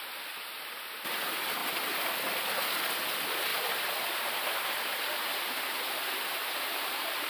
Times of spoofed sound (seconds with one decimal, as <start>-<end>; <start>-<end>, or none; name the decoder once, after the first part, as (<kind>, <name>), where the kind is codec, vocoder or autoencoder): none

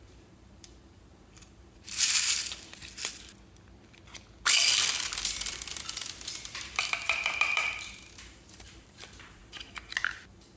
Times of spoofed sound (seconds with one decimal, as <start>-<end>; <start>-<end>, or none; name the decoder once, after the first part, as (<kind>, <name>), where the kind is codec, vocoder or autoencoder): 0.0-2.7 (vocoder, BigVGAN v2); 5.4-9.4; 10.0-10.6

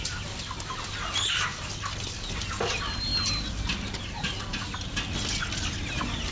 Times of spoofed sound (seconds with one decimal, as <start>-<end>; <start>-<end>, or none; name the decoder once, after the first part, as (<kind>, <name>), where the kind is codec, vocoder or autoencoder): none

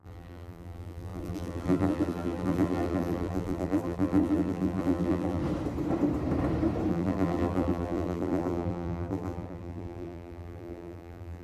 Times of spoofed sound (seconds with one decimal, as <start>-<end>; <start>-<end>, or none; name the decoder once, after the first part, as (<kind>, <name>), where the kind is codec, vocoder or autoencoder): 0.0-5.4 (vocoder, BigVGAN v2); 6.9-11.4

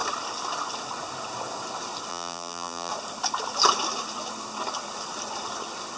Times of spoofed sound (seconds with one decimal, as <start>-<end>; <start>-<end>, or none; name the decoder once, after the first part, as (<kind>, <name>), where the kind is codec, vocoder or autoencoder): 2.1-2.9 (vocoder, BigVGAN v2)

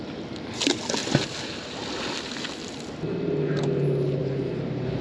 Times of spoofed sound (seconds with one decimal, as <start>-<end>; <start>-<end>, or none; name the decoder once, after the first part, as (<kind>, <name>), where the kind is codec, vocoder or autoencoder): 4.2-5.0 (vocoder, BigVGAN v2)

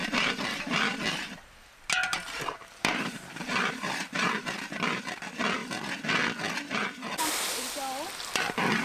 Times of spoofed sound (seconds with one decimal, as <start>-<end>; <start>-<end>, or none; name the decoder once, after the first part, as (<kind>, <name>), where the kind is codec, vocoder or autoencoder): 2.1-4.3 (vocoder, BigVGAN v2)